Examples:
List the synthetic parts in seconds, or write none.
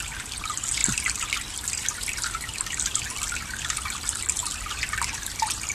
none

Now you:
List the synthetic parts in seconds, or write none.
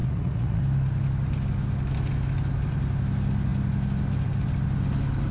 0.0-0.6 (vocoder, Vocos)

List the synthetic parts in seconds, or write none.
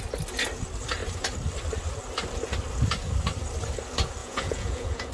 4.2-5.1 (vocoder, Vocos)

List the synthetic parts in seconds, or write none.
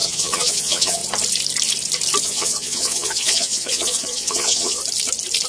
0.0-1.0 (vocoder, Vocos); 2.2-4.8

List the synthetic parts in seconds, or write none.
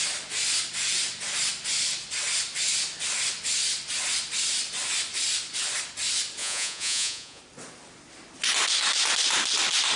6.4-7.4 (vocoder, Vocos)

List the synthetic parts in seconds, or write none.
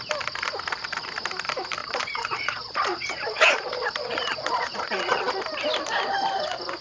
1.8-5.4 (vocoder, Vocos)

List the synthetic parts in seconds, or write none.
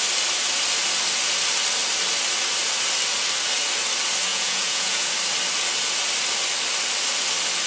4.3-5.1 (vocoder, Vocos)